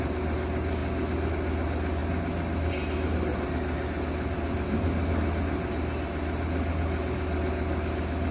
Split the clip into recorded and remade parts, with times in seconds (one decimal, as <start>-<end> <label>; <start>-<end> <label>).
0.0-8.3 recorded